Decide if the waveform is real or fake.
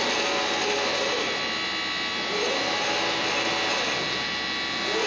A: real